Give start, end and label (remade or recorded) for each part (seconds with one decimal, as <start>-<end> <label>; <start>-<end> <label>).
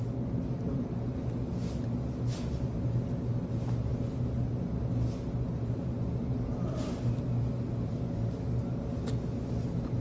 0.0-10.0 recorded